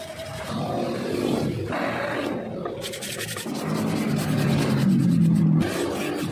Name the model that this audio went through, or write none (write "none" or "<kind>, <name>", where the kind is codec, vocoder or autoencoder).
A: none